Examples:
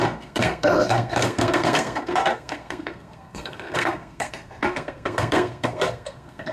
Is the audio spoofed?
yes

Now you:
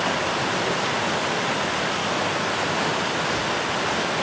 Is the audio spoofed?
no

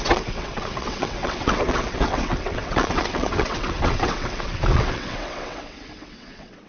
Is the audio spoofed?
yes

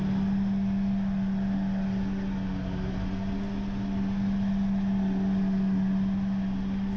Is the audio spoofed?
no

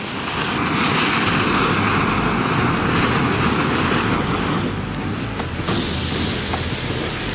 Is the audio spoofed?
no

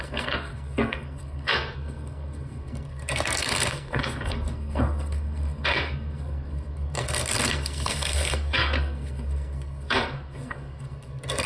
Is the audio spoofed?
yes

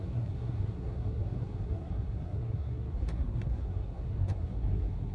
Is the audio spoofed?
yes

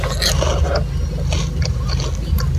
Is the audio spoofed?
no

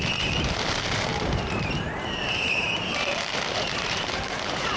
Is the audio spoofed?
yes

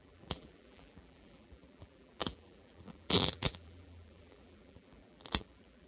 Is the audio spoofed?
yes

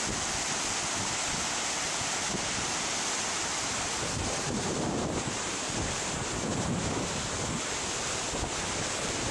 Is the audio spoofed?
no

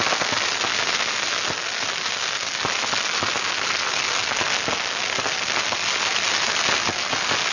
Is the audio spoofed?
no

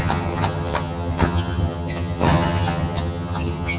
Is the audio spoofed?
yes